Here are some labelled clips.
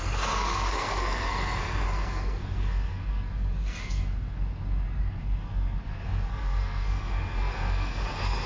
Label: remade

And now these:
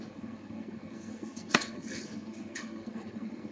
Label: remade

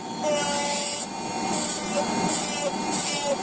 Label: recorded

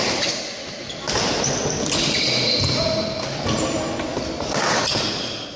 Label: recorded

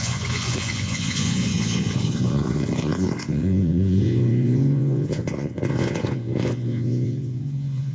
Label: remade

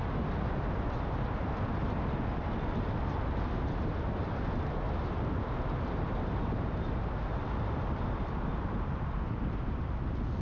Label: recorded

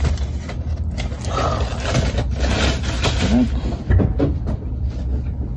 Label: recorded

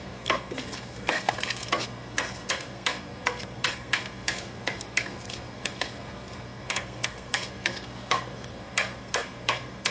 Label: remade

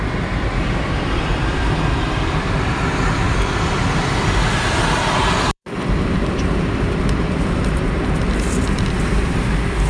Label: remade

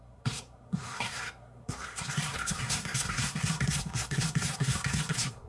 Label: remade